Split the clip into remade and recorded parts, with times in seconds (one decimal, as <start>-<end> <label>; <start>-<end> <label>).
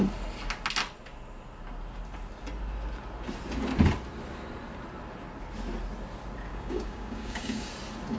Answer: 0.0-6.5 recorded; 6.5-7.7 remade; 7.7-8.2 recorded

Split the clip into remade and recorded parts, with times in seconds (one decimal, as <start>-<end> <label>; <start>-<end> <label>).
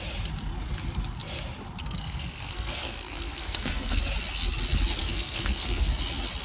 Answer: 0.0-1.8 recorded; 1.8-4.0 remade; 4.0-5.0 recorded; 5.0-6.0 remade; 6.0-6.4 recorded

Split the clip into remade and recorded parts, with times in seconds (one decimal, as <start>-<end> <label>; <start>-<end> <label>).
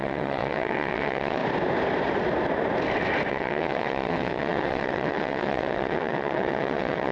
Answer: 0.0-1.4 remade; 1.4-3.3 recorded; 3.3-7.1 remade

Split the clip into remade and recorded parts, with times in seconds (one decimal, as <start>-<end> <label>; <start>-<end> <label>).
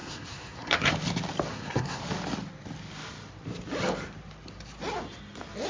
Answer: 0.0-0.9 remade; 0.9-1.5 recorded; 1.5-2.0 remade; 2.0-5.7 recorded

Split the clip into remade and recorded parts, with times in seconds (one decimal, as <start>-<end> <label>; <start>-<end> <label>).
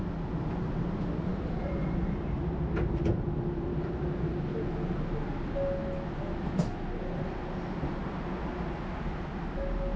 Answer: 0.0-1.3 recorded; 1.3-2.2 remade; 2.2-10.0 recorded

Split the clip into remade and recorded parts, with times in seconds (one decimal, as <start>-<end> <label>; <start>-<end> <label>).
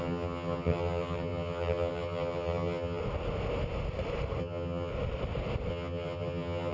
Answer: 0.0-3.0 remade; 3.0-4.4 recorded; 4.4-4.9 remade; 4.9-5.7 recorded; 5.7-6.7 remade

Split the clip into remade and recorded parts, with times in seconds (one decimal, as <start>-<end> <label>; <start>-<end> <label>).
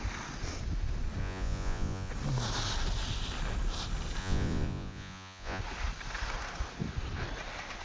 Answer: 0.0-1.2 recorded; 1.2-2.1 remade; 2.1-4.2 recorded; 4.2-5.6 remade; 5.6-7.8 recorded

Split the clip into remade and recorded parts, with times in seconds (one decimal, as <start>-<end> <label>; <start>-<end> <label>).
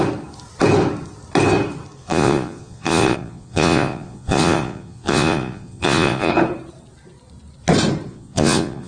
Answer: 0.0-2.0 recorded; 2.0-6.3 remade; 6.3-8.1 recorded; 8.1-8.9 remade